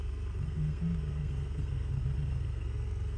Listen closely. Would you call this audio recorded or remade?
remade